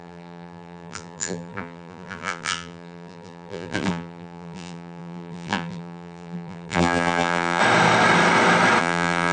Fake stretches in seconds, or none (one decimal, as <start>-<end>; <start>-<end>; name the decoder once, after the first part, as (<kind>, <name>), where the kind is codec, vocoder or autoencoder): 0.0-7.6 (vocoder, BigVGAN v2); 8.8-9.3